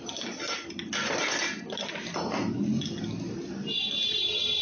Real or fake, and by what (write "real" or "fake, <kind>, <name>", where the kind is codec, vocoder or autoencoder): real